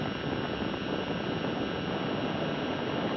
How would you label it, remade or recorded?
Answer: recorded